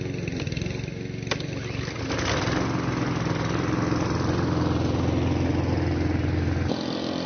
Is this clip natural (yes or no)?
yes